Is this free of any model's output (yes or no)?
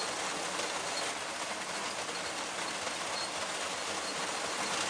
yes